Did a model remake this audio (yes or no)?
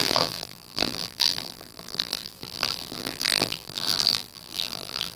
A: yes